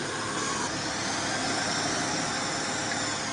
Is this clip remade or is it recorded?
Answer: recorded